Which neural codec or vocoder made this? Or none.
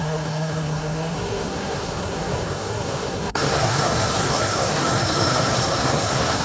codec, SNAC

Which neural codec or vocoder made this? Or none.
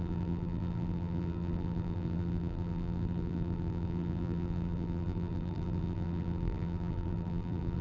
vocoder, BigVGAN v2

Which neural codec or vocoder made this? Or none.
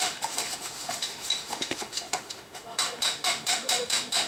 autoencoder, DAC-VAE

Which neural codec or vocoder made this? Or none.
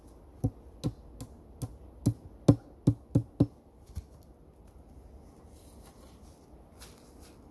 none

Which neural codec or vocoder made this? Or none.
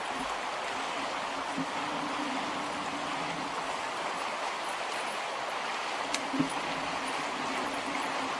none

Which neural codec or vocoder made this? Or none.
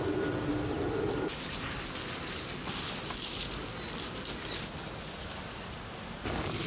none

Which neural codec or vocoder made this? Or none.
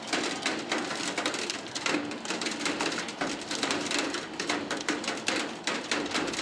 vocoder, BigVGAN v2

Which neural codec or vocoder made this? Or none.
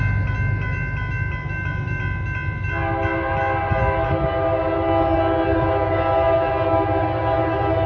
none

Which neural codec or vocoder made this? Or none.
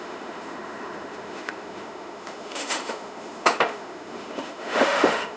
autoencoder, DAC-VAE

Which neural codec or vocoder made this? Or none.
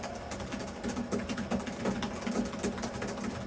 none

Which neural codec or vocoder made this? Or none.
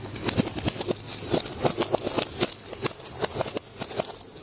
none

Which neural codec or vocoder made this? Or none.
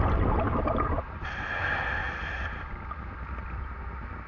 none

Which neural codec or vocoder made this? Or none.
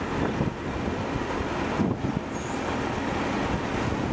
none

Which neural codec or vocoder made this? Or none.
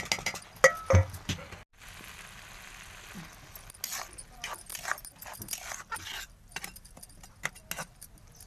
none